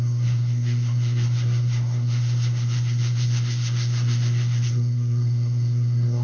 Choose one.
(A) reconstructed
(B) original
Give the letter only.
A